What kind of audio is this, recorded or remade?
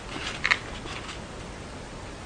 recorded